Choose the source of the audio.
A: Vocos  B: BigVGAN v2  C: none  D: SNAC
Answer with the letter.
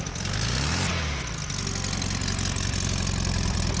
C